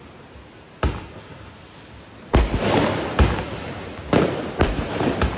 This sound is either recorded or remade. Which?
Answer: recorded